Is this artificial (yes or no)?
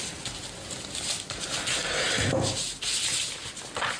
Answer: no